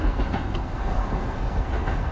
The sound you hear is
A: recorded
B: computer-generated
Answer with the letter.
B